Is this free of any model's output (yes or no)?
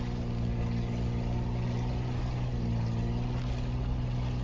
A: yes